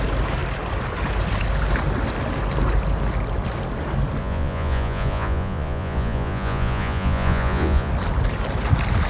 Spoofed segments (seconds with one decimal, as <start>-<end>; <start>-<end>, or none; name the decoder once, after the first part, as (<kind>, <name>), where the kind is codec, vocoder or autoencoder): 4.2-7.9 (vocoder, Vocos)